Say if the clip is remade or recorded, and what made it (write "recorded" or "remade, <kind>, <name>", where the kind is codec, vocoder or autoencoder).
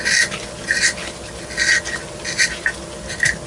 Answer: recorded